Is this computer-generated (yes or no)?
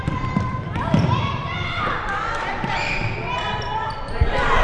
yes